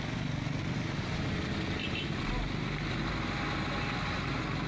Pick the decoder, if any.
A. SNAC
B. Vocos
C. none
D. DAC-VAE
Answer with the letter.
C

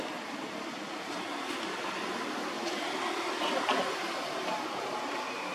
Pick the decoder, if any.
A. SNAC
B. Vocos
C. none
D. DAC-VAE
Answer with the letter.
C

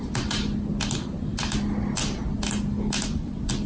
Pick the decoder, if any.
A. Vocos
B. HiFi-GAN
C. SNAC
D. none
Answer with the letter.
D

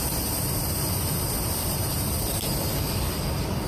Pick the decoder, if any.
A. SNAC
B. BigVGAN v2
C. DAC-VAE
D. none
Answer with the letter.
B